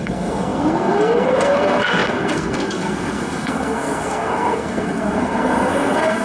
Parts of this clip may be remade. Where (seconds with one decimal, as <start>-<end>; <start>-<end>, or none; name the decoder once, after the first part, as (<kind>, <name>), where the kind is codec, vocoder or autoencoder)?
0.0-6.2 (codec, SNAC)